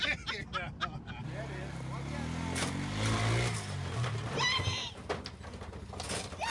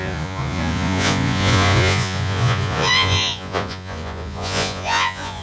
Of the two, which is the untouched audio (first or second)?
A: first